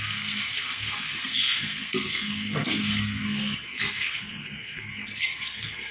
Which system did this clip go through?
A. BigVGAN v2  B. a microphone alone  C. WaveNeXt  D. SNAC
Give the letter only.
D